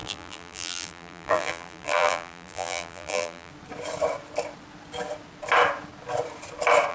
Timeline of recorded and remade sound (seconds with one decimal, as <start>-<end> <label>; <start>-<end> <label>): 0.0-3.5 remade; 3.5-6.9 recorded